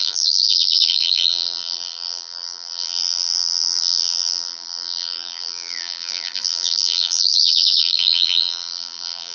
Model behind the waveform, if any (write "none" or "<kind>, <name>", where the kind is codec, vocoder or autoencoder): vocoder, BigVGAN v2